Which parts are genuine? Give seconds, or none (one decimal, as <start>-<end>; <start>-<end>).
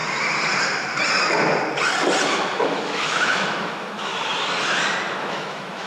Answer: 0.0-2.3; 4.1-5.1